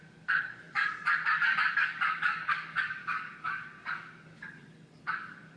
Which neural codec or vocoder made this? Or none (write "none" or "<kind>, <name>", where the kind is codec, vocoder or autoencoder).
codec, DAC